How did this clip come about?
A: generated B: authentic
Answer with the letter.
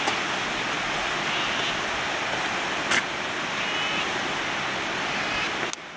B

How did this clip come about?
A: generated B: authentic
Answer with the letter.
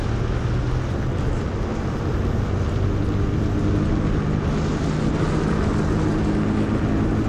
B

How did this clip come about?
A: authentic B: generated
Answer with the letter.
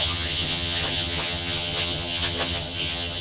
B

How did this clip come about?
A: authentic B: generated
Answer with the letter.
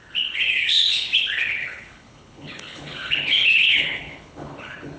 B